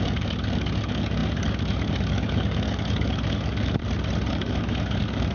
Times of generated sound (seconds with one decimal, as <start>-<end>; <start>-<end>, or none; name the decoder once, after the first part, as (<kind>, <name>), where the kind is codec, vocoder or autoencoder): 0.0-3.8 (codec, DAC); 4.3-5.3

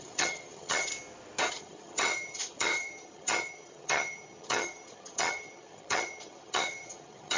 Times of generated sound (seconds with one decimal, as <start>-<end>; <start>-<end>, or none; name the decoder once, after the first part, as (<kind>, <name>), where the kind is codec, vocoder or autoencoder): 0.0-0.9 (vocoder, HiFi-GAN); 1.5-7.4